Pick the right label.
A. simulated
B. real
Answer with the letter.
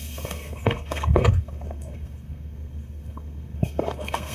A